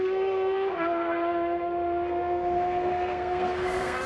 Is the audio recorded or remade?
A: remade